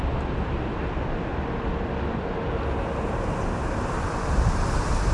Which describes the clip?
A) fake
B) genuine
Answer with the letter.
B